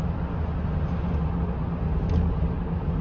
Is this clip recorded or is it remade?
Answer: recorded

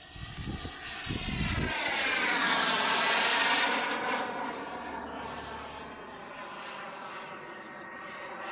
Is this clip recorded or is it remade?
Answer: recorded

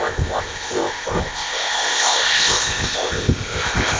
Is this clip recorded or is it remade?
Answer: remade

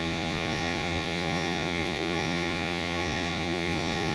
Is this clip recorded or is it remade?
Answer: remade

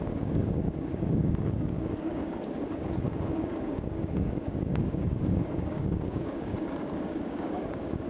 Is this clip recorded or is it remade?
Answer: remade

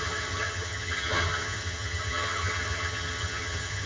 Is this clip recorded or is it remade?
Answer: remade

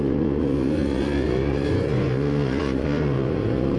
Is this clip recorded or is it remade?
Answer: remade